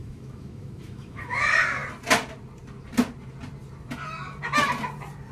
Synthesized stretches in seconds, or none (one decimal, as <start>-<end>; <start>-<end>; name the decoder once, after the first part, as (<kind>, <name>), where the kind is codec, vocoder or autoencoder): 0.0-1.4 (autoencoder, DAC-VAE)